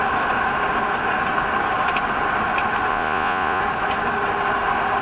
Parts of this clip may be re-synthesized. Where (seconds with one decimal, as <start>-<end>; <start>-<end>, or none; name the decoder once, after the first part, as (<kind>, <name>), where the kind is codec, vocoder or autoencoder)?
2.9-3.6 (vocoder, Vocos)